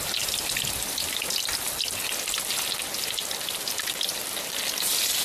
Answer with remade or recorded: recorded